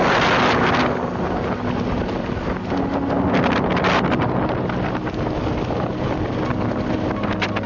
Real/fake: real